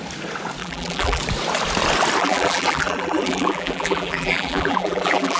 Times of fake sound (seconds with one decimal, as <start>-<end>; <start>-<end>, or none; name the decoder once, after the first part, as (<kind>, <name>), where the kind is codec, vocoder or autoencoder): 0.6-1.2 (vocoder, BigVGAN v2); 2.2-5.4